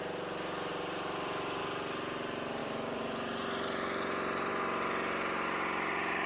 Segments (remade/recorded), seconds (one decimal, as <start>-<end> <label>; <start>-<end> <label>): 0.0-0.7 recorded; 0.7-1.6 remade; 1.6-2.6 recorded; 2.6-4.5 remade; 4.5-6.3 recorded